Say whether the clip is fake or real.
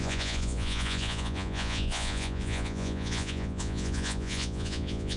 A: fake